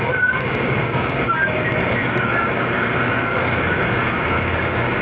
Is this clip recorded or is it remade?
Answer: remade